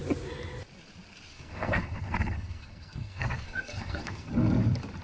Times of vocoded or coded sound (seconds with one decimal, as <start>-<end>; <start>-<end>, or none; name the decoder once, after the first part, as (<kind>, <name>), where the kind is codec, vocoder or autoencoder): 1.3-4.3 (codec, SNAC)